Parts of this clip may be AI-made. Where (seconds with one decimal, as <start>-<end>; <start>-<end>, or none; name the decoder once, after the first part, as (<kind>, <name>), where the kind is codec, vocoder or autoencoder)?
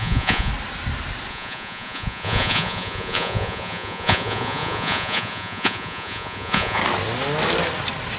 0.0-0.5 (vocoder, Vocos); 1.3-6.8